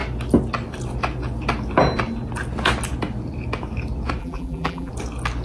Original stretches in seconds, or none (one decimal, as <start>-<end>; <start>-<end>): 0.0-4.2; 4.9-5.4